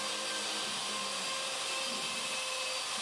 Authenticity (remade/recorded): recorded